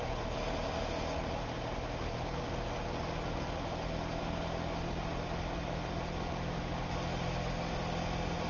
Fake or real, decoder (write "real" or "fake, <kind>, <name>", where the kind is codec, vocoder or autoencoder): real